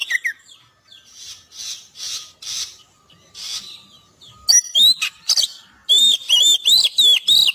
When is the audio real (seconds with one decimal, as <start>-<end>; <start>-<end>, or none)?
0.0-7.5